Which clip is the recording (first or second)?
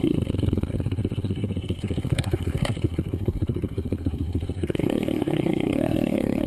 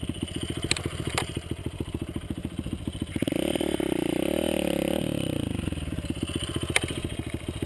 second